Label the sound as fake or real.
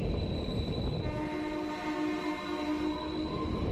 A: real